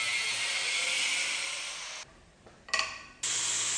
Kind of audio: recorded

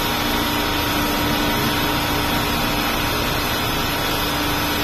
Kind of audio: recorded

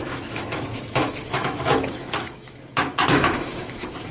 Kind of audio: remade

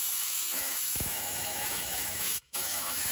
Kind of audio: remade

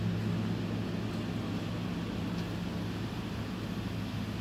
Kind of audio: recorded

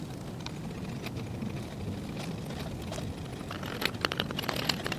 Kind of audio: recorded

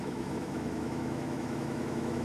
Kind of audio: remade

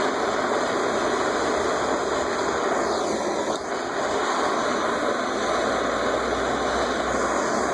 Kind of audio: recorded